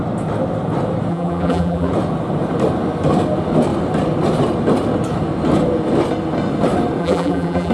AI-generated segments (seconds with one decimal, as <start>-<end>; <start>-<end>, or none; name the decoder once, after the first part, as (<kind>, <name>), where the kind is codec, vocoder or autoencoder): 1.1-1.9 (vocoder, BigVGAN v2); 7.0-7.7